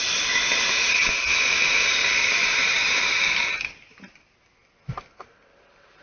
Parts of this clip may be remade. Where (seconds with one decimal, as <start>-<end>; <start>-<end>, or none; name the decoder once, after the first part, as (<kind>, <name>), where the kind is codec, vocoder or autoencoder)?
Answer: none